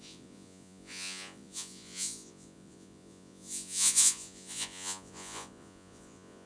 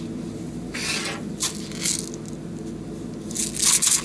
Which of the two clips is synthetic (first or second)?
first